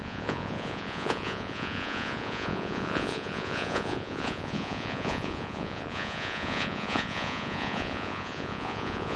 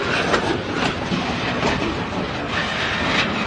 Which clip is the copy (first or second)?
first